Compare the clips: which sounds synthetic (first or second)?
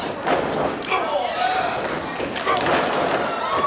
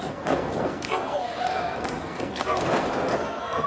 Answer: second